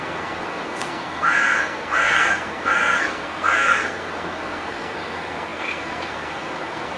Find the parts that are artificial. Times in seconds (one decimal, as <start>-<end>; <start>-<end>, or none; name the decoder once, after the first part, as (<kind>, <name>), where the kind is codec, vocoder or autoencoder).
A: 0.0-7.0 (codec, SNAC)